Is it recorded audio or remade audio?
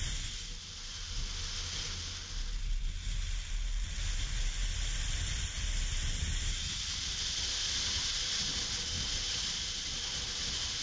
recorded